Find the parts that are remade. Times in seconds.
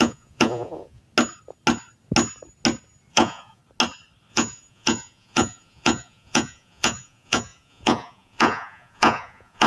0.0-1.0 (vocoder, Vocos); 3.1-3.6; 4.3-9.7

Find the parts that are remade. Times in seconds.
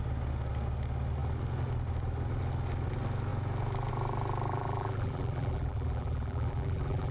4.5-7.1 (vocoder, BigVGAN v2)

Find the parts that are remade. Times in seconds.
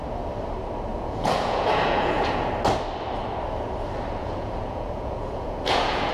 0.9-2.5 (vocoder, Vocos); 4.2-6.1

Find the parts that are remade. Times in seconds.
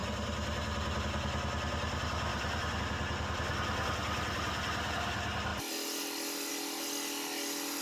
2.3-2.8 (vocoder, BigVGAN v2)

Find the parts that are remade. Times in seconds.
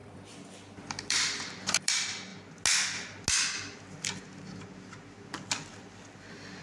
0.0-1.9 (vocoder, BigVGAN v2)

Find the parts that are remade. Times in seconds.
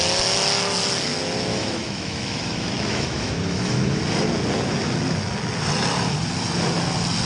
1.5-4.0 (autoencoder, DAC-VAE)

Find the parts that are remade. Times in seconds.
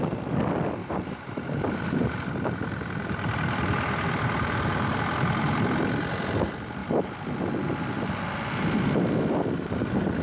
0.8-5.0 (vocoder, BigVGAN v2)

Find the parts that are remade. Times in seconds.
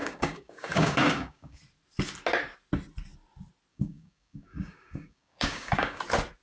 0.0-1.6 (codec, DAC); 3.7-6.0